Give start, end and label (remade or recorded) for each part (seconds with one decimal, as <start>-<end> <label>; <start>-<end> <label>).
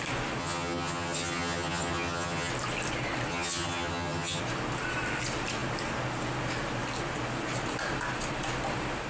0.0-0.4 recorded; 0.4-2.5 remade; 2.5-3.3 recorded; 3.3-4.4 remade; 4.4-9.1 recorded